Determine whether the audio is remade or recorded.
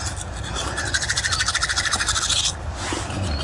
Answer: recorded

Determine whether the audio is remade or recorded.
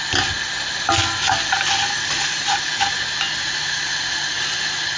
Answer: recorded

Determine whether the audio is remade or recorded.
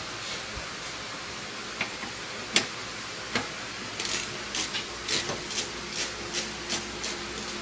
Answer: recorded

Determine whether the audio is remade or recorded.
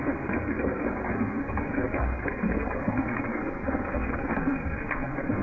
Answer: remade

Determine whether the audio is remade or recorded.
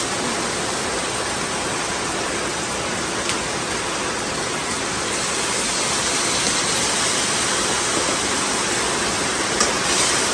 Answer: recorded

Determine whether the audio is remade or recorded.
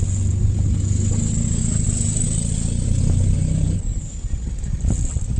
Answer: recorded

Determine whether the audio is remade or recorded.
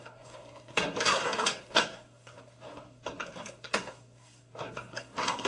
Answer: remade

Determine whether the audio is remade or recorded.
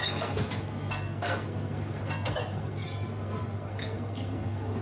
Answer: remade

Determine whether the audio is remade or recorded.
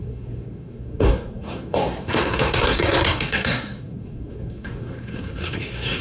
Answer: remade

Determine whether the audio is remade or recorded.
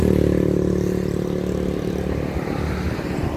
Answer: recorded